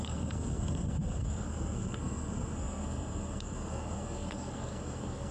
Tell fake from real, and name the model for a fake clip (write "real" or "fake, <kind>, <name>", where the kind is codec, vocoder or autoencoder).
fake, codec, SNAC